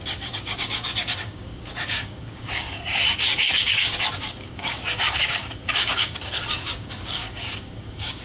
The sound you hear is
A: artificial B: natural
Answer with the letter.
A